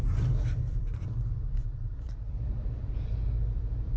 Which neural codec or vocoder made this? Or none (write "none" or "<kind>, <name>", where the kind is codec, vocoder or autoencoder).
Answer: vocoder, BigVGAN v2